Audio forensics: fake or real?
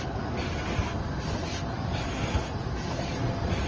real